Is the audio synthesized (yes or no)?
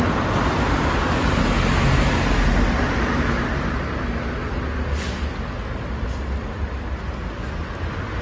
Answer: no